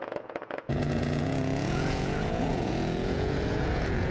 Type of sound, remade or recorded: remade